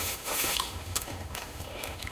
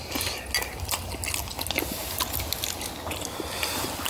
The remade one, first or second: first